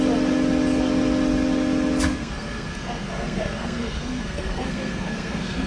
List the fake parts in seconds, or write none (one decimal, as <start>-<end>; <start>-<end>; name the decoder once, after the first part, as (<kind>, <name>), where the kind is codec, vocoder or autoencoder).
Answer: 2.1-5.7 (codec, SNAC)

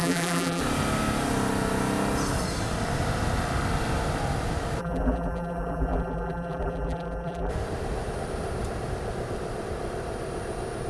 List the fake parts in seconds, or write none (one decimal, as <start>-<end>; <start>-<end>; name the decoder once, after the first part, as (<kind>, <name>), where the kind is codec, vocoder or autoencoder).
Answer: 0.0-0.6 (vocoder, BigVGAN v2); 4.8-7.5

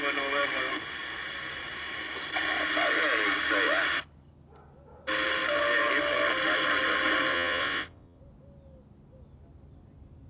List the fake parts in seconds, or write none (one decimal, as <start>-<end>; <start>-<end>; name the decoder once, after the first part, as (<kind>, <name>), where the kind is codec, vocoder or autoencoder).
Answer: 7.3-8.2 (vocoder, WaveNeXt)

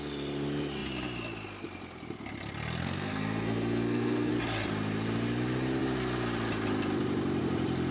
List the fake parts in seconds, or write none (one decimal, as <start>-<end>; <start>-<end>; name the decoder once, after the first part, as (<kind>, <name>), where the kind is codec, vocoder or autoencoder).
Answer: 2.8-4.3 (codec, SNAC)

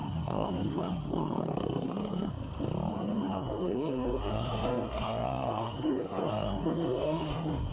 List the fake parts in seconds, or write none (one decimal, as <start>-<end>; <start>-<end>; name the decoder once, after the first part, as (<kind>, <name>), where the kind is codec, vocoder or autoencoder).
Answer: 0.0-2.3 (codec, SNAC); 2.9-7.7

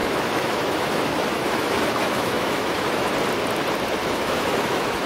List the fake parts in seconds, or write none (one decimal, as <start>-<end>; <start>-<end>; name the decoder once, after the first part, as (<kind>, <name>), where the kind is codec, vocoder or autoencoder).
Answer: 0.0-3.1 (autoencoder, DAC-VAE); 4.0-5.1

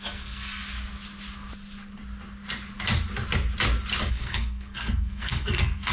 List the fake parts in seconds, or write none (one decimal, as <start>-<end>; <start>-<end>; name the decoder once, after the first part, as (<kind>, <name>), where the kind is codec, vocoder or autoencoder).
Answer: 0.0-0.6 (codec, SNAC); 4.1-5.9

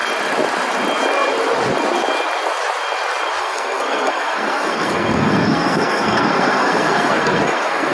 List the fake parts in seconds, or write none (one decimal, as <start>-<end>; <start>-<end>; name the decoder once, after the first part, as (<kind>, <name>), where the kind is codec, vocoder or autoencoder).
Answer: 3.4-7.9 (codec, SNAC)